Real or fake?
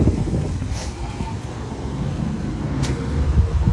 fake